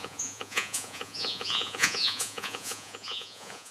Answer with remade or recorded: remade